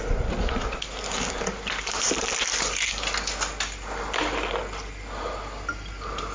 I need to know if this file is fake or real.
real